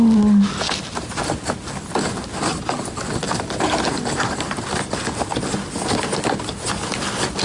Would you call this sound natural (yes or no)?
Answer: yes